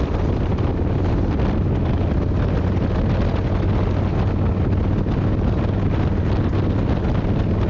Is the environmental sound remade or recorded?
recorded